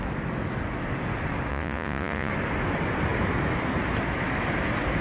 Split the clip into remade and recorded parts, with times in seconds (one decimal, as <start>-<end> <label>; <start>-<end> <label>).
0.0-1.5 recorded; 1.5-2.3 remade; 2.3-5.0 recorded